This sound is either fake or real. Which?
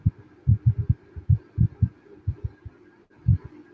real